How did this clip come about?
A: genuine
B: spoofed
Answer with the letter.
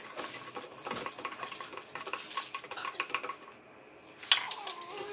A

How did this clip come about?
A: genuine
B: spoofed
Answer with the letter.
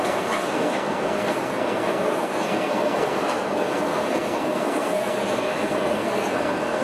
B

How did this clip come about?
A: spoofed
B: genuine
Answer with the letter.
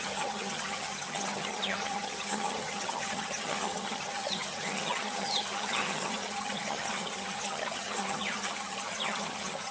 A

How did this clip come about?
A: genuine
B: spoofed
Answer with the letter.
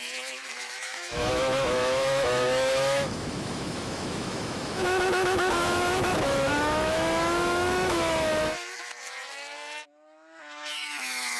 B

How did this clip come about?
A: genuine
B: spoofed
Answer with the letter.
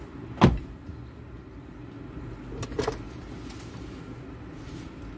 A